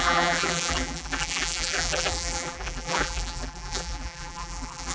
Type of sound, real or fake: fake